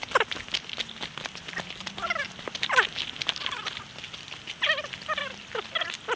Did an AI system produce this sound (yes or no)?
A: no